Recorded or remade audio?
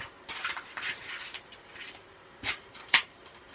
remade